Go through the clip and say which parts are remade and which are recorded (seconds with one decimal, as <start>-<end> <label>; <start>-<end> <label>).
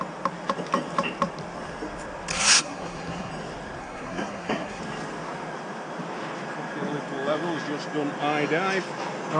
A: 0.0-2.3 recorded; 2.3-3.3 remade; 3.3-3.8 recorded; 3.8-4.8 remade; 4.8-9.4 recorded